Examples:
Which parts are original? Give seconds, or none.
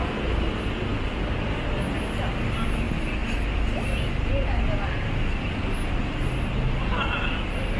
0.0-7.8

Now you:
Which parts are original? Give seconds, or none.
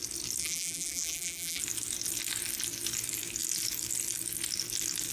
0.0-0.4; 1.6-5.1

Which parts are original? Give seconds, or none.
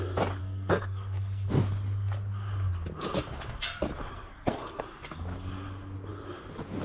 0.0-0.4; 1.5-4.1; 4.8-6.8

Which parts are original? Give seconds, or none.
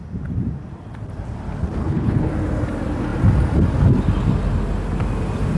0.0-1.8; 2.3-5.6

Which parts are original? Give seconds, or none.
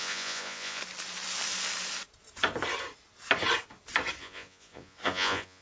0.8-4.2